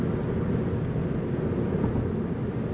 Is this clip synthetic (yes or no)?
no